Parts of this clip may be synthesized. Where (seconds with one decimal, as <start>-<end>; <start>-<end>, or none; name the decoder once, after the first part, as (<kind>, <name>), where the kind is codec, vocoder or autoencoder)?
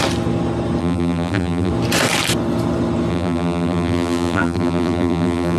0.8-1.7 (vocoder, BigVGAN v2); 3.1-5.6